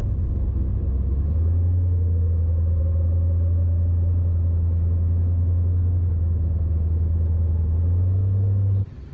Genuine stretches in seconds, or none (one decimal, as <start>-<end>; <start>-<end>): 0.0-9.1